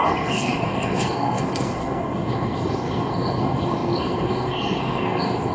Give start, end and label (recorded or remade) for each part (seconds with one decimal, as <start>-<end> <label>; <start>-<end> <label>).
0.0-5.5 remade